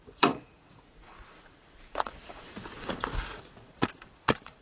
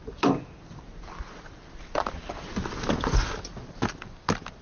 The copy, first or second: first